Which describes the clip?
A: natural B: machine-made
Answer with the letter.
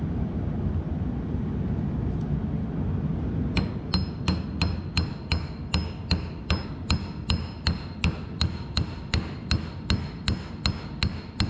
A